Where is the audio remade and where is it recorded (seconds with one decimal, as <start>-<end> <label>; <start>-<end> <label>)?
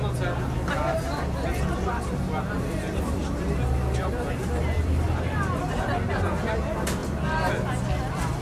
0.0-3.2 recorded; 3.2-5.8 remade; 5.8-8.4 recorded